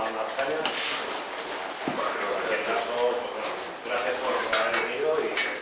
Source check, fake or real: real